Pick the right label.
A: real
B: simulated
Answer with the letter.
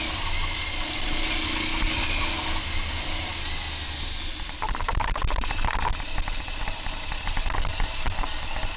A